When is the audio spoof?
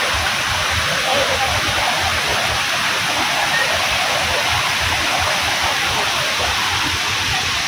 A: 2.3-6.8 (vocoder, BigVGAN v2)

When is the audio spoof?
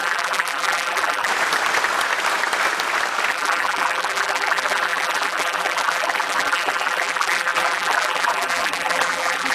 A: 0.0-1.3 (vocoder, BigVGAN v2); 3.3-9.5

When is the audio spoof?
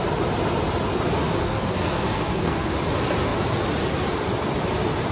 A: 1.4-2.7 (codec, SNAC)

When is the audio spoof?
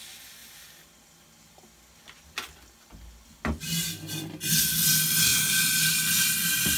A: none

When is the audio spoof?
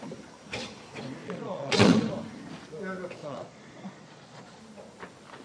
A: 1.2-2.1 (vocoder, Vocos); 3.2-4.6